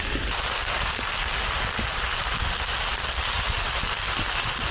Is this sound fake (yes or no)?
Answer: no